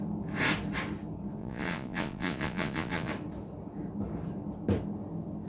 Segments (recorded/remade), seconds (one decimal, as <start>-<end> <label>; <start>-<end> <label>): 0.0-1.4 recorded; 1.4-3.1 remade; 3.1-5.5 recorded